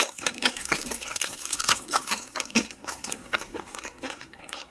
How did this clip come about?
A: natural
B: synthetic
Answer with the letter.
B